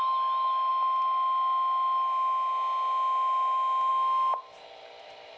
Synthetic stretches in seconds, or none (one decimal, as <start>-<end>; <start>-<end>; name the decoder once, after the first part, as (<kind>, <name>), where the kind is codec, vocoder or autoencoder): none